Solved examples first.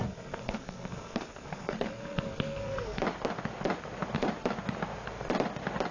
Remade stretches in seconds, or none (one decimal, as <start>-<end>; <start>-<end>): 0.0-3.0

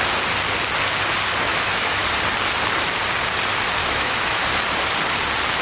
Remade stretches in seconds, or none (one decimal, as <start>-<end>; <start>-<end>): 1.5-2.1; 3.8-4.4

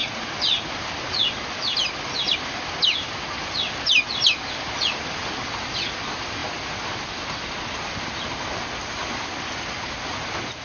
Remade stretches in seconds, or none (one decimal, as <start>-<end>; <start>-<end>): none